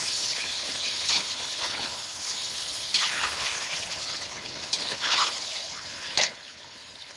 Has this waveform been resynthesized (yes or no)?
yes